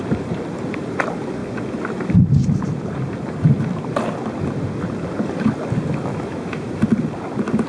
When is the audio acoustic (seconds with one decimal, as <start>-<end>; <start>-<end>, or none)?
0.0-6.1; 6.8-7.7